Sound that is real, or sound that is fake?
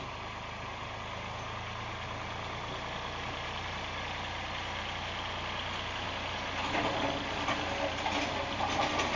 real